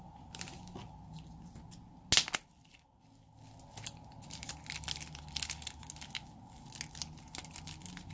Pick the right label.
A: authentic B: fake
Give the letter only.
A